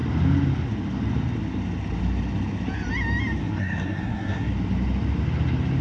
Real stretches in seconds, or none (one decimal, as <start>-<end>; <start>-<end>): 0.0-3.4; 4.5-5.8